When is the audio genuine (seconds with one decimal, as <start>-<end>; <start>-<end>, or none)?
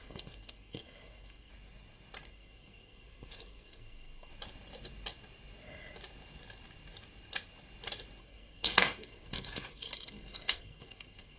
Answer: 1.5-2.3; 4.3-8.2